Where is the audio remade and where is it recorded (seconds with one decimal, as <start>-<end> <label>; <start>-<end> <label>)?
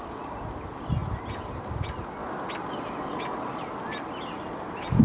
0.0-5.0 recorded